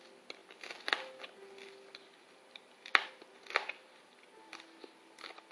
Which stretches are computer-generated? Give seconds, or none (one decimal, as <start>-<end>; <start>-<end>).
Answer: 0.4-0.9